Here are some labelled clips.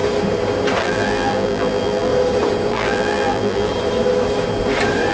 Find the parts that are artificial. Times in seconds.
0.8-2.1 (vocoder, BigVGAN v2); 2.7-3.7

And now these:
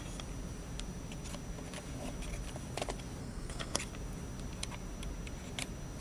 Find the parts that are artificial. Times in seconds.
3.2-3.8 (codec, SNAC)

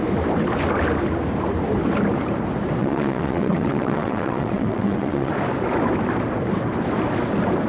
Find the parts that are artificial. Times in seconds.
2.8-5.3 (vocoder, WaveNeXt)

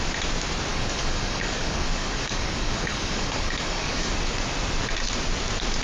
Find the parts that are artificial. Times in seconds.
0.7-4.1 (codec, DAC)